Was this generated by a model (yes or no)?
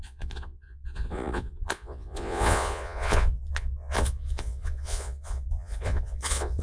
yes